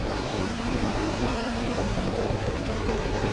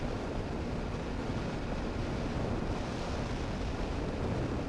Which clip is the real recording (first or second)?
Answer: second